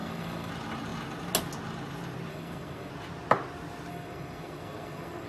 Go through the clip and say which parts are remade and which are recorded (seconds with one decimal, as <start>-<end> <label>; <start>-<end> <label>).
0.0-0.5 remade; 0.5-2.3 recorded; 2.3-2.9 remade; 2.9-3.9 recorded; 3.9-5.3 remade